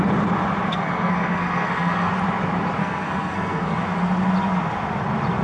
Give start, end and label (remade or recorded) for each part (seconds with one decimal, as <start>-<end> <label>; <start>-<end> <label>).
0.0-0.7 recorded; 0.7-2.1 remade; 2.1-2.8 recorded; 2.8-3.8 remade; 3.8-5.4 recorded